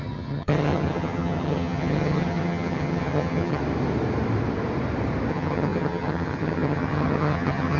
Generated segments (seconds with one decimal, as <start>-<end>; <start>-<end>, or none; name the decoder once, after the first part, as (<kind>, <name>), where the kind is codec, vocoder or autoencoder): 0.0-3.6 (vocoder, HiFi-GAN); 5.3-7.8